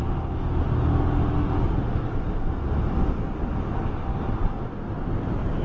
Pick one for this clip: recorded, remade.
recorded